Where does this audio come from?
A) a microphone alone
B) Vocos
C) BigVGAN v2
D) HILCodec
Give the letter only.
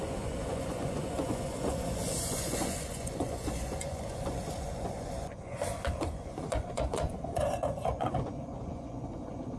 B